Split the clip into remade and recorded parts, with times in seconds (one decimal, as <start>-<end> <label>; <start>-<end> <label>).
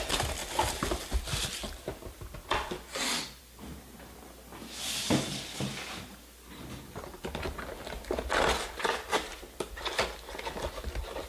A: 0.0-11.3 recorded